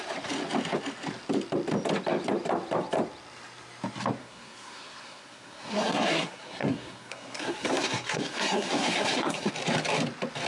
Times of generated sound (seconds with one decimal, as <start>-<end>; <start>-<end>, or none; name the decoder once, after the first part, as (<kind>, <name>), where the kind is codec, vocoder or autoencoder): 4.2-9.5 (codec, SNAC)